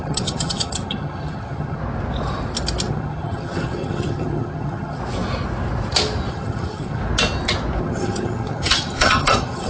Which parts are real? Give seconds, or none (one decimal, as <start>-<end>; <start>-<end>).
1.8-2.9; 5.0-6.3; 7.0-7.8